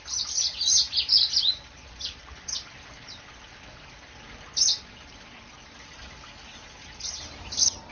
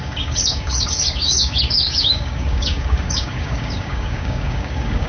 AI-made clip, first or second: second